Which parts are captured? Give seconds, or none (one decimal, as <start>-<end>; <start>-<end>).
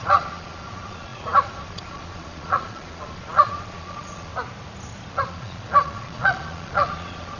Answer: 4.3-5.1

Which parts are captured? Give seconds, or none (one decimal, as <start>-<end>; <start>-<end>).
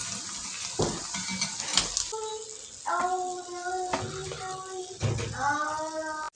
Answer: 0.0-6.4